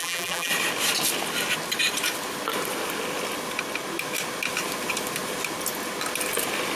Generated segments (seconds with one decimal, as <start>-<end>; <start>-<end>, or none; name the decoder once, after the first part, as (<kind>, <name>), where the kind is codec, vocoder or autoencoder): 0.0-0.5 (vocoder, BigVGAN v2)